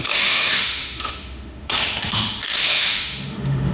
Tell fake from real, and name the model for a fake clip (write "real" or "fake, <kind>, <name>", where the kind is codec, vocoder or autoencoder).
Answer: fake, autoencoder, DAC-VAE